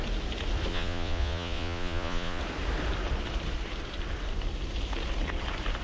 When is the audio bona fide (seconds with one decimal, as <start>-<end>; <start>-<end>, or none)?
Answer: 0.0-0.7; 2.4-5.8

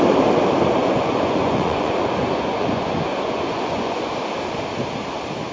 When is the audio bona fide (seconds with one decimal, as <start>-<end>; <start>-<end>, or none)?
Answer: 0.0-0.8; 4.1-5.5

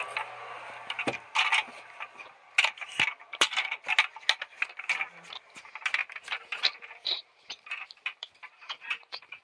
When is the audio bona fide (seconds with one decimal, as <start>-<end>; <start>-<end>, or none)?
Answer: 0.0-6.0

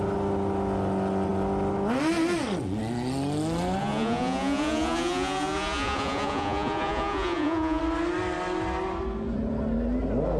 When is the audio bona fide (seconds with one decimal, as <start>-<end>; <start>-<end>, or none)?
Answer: 0.0-3.8; 7.8-10.4